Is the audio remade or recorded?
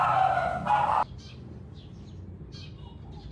recorded